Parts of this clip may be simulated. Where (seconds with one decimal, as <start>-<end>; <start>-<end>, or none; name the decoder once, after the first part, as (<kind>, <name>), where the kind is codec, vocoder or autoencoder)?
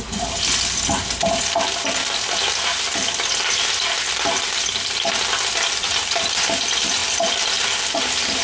none